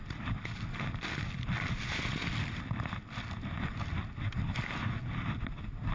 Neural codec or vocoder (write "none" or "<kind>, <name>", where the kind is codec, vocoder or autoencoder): none